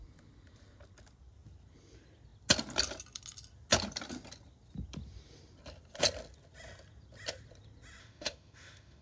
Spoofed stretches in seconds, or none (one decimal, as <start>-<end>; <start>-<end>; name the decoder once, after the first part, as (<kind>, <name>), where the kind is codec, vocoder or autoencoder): 8.0-9.0 (autoencoder, DAC-VAE)

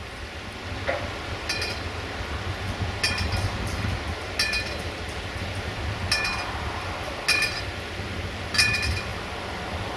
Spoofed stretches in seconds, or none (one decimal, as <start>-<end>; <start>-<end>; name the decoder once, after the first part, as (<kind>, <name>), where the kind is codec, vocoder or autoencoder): none

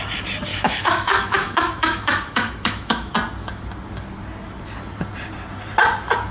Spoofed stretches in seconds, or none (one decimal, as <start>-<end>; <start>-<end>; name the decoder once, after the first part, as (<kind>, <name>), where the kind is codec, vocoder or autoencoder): 0.5-3.1 (autoencoder, DAC-VAE)

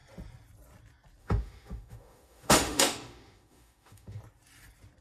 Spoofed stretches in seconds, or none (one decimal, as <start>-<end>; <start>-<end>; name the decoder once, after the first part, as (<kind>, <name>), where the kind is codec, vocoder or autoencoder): 1.2-4.2 (autoencoder, DAC-VAE)

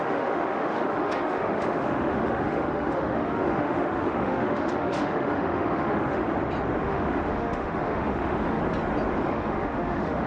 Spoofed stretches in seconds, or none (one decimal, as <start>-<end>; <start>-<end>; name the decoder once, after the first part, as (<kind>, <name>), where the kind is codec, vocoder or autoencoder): 0.0-6.2 (autoencoder, DAC-VAE); 6.8-8.6; 9.3-10.3

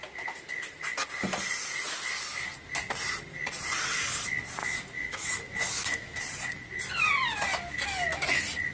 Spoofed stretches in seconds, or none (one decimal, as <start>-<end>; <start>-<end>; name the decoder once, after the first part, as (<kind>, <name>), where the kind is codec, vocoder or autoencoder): 4.6-6.2 (autoencoder, DAC-VAE)